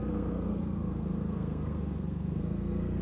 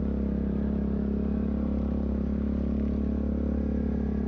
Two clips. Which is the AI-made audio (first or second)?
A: first